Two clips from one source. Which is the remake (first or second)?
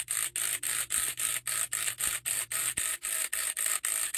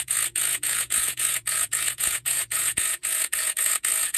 second